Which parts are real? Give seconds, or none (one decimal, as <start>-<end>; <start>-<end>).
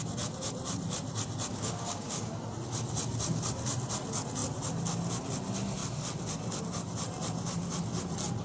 0.0-1.5; 2.3-8.4